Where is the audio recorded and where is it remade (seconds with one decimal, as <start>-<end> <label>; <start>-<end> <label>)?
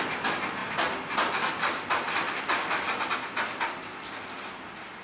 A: 0.0-5.0 recorded